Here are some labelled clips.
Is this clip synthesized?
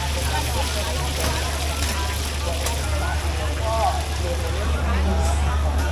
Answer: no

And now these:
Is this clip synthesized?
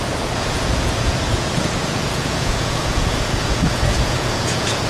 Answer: yes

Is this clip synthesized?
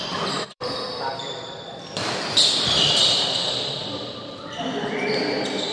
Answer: yes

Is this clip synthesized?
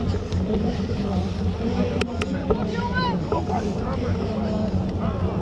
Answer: no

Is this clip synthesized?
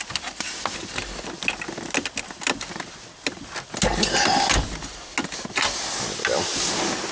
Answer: no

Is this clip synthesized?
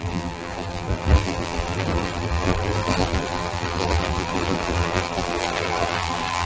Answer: yes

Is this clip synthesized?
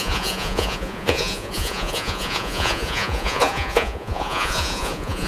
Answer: yes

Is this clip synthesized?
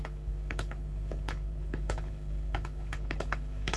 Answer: yes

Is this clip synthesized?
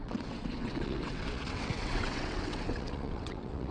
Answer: yes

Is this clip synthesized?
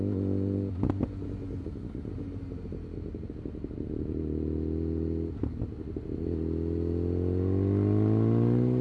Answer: no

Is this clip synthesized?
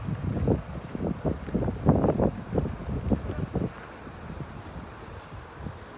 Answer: no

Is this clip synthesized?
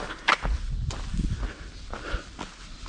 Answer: no